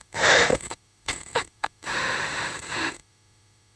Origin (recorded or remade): remade